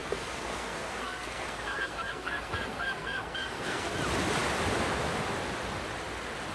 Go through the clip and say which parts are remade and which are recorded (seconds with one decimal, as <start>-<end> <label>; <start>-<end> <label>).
0.0-3.9 remade; 3.9-6.5 recorded